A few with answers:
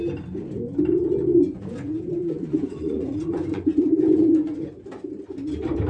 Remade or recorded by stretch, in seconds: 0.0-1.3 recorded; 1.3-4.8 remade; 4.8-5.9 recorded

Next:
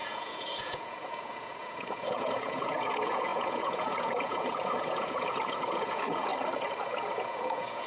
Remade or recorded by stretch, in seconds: 0.0-6.3 remade; 6.3-6.8 recorded; 6.8-7.9 remade

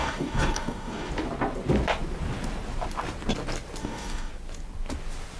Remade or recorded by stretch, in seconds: 0.0-1.1 remade; 1.1-3.8 recorded; 3.8-4.3 remade; 4.3-5.4 recorded

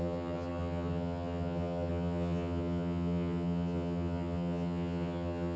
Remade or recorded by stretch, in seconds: 0.0-5.6 remade

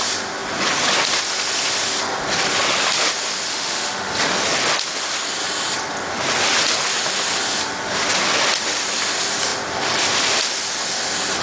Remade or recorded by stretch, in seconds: 0.0-3.5 recorded; 3.5-4.1 remade; 4.1-11.4 recorded

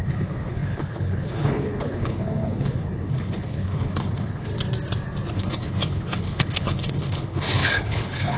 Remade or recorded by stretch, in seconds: 0.0-4.5 remade; 4.5-5.3 recorded; 5.3-8.4 remade